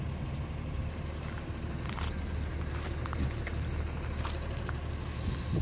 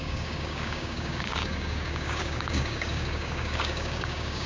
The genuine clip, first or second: first